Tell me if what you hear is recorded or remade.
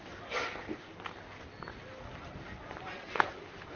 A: recorded